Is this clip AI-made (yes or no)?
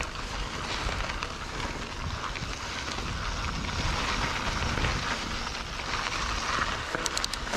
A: no